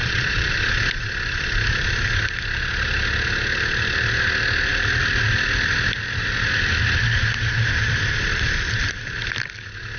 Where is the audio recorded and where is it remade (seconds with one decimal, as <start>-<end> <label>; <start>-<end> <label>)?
0.0-0.5 remade; 0.5-10.0 recorded